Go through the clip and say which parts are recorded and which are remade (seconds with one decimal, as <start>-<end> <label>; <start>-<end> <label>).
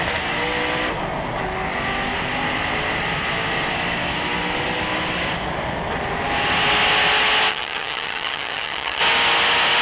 0.0-7.5 recorded; 7.5-9.0 remade; 9.0-9.8 recorded